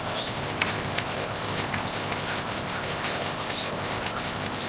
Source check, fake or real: fake